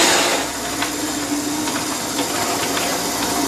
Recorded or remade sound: recorded